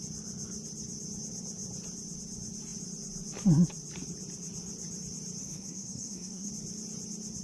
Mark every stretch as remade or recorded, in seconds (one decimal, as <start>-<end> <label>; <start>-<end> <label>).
0.0-5.4 recorded; 5.4-6.5 remade; 6.5-7.4 recorded